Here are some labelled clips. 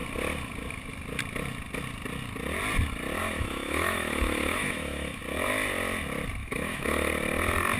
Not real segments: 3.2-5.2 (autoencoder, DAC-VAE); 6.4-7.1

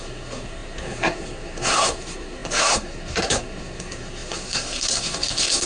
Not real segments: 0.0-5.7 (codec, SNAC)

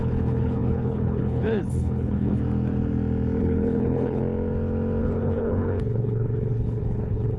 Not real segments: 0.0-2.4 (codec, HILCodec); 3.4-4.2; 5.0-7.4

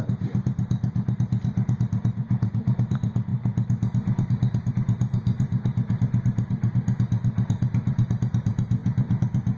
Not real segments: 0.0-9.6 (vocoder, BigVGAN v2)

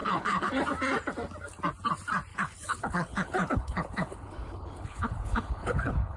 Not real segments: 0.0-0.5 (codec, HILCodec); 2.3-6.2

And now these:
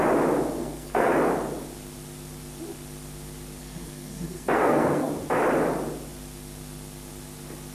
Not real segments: 0.6-1.1 (codec, SNAC); 3.6-5.1

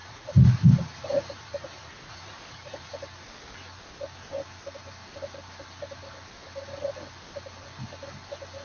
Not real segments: 0.0-2.9 (vocoder, Vocos)